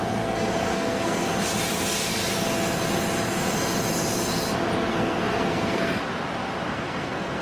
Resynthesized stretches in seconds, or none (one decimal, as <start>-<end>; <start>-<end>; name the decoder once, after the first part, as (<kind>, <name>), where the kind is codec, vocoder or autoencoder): 0.0-1.3 (codec, SNAC); 4.9-6.0; 6.7-7.4